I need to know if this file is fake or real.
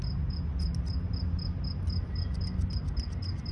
real